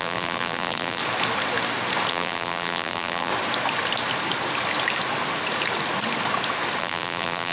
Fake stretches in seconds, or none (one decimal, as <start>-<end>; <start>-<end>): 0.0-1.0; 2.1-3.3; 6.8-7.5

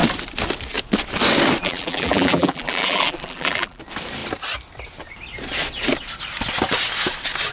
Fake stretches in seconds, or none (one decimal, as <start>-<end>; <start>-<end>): 1.6-3.8

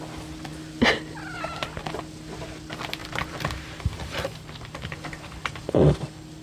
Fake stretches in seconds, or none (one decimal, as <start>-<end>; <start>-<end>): 3.0-6.0

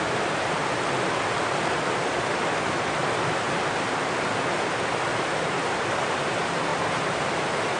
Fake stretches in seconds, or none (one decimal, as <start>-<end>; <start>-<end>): 0.0-0.6; 5.3-7.8

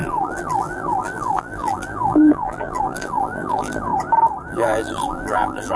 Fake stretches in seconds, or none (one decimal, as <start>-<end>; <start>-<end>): 0.0-3.9; 4.5-5.8

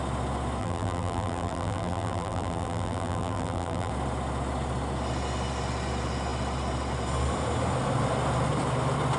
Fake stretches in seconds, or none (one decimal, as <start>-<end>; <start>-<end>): 0.6-3.9

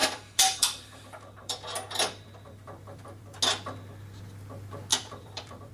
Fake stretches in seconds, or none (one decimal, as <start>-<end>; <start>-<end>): 0.0-3.4; 4.9-5.7

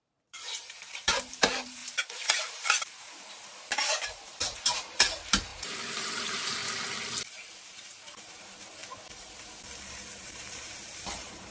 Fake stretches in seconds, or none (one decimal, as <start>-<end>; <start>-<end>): 0.0-6.6; 7.7-8.8; 10.2-11.5